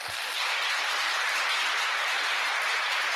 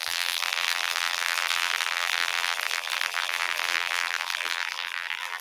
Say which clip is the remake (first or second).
second